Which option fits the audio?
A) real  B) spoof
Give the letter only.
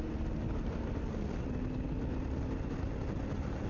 A